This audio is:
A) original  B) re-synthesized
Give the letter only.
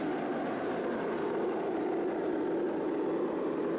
A